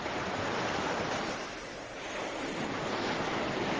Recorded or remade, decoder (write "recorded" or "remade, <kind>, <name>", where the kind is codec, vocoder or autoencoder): recorded